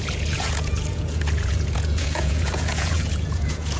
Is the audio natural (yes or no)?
no